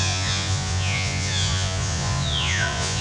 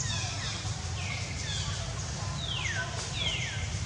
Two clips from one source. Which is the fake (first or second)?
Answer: first